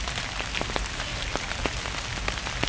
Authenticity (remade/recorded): recorded